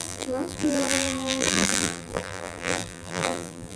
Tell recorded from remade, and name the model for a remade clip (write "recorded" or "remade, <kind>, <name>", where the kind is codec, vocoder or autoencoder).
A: remade, vocoder, BigVGAN v2